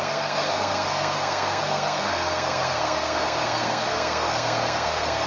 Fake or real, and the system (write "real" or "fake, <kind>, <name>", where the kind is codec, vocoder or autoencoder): fake, codec, SNAC